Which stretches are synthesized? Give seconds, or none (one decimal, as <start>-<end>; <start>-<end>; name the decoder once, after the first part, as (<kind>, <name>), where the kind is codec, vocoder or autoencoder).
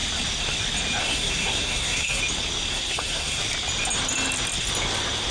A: 1.0-2.2 (codec, SNAC); 2.7-3.4